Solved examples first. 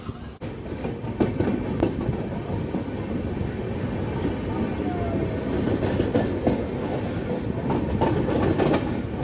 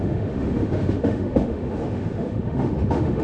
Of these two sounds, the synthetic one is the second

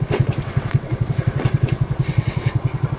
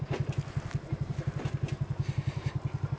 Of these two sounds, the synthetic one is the first